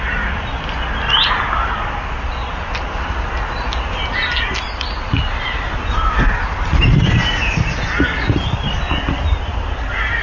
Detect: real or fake real